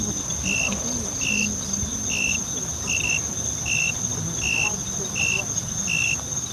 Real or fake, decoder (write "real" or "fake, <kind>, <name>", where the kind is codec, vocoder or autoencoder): real